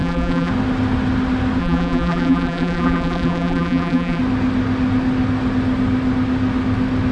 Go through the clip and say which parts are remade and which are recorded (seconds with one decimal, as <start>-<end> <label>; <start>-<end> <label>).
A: 0.0-0.5 remade; 0.5-1.6 recorded; 1.6-4.2 remade; 4.2-7.1 recorded